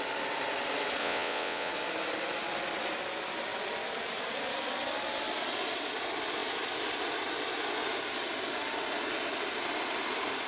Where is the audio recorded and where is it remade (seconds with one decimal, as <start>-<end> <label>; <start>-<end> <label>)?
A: 0.0-1.0 recorded; 1.0-1.7 remade; 1.7-10.5 recorded